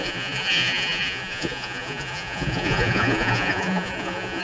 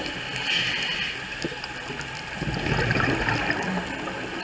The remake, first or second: first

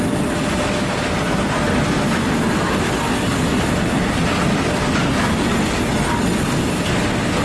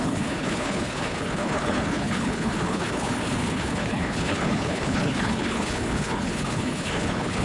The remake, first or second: second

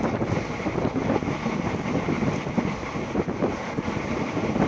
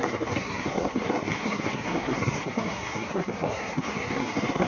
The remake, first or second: second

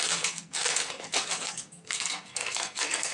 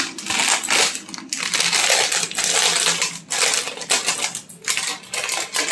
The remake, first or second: first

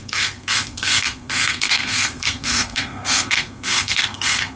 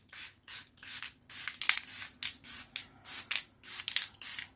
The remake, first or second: first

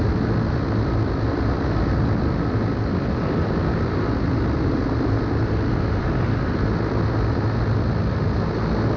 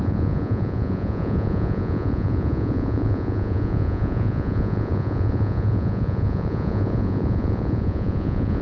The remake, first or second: second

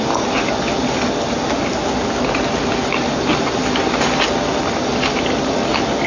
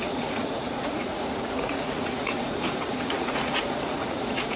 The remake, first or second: second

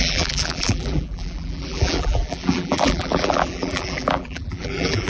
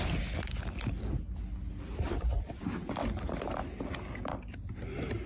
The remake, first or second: first